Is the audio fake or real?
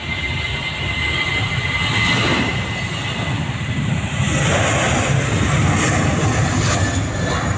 real